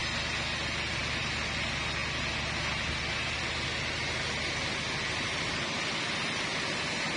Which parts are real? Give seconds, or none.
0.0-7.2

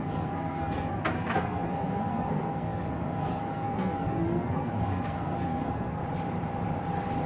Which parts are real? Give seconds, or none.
6.0-7.3

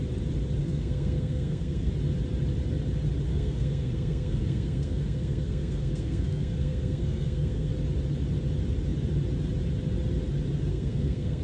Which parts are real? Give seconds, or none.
0.0-0.6; 1.9-3.3; 7.7-10.7

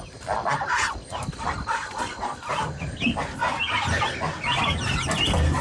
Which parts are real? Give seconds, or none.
0.0-5.6

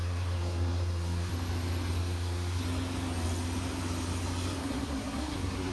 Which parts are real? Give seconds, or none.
1.3-2.0; 2.6-4.6

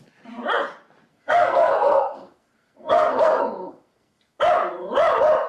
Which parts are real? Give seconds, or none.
0.0-1.1; 4.4-5.5